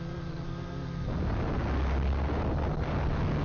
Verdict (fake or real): real